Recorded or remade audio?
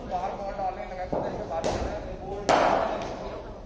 recorded